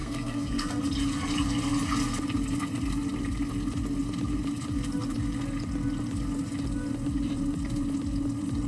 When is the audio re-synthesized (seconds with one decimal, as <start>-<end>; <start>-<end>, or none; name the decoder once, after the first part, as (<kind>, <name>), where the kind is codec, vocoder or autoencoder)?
0.0-0.8 (codec, SNAC)